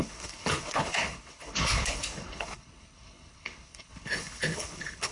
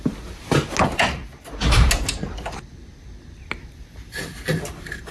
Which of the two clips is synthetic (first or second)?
first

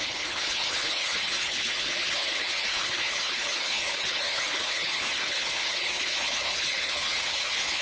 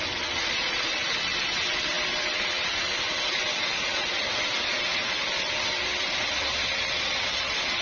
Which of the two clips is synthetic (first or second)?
first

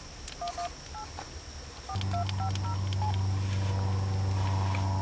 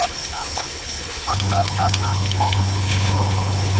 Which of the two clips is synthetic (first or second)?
second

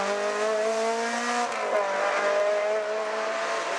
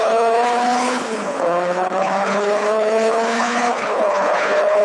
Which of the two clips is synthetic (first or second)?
second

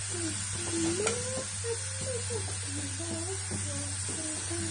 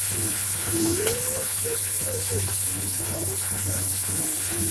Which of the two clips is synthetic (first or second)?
second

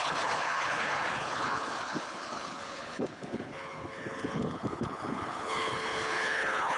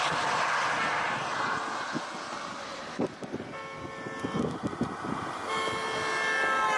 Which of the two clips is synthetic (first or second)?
first